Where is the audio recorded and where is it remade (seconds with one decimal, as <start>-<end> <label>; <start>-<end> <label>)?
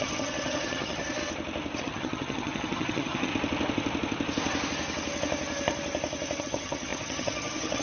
0.0-1.2 remade; 1.2-1.8 recorded; 1.8-3.3 remade; 3.3-6.4 recorded; 6.4-7.8 remade